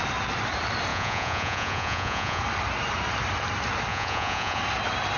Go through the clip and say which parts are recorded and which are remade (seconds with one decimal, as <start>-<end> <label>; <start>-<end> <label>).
0.0-0.9 recorded; 0.9-2.4 remade; 2.4-3.9 recorded; 3.9-4.6 remade; 4.6-5.2 recorded